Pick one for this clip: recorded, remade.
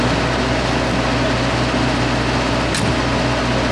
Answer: recorded